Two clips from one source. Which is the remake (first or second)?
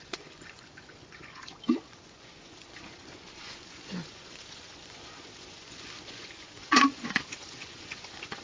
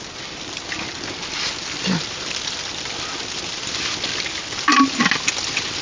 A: first